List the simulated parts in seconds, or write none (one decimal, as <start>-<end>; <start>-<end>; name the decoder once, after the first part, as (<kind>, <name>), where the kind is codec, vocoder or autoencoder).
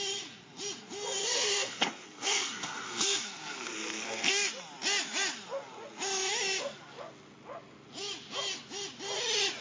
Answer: 1.2-4.5 (codec, SNAC)